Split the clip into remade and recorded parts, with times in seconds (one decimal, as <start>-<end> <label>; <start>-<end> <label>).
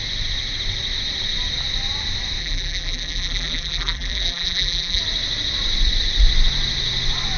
0.0-2.4 recorded; 2.4-5.0 remade; 5.0-7.4 recorded